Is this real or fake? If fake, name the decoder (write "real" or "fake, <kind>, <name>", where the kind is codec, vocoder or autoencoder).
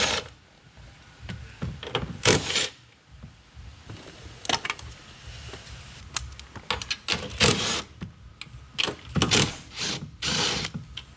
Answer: real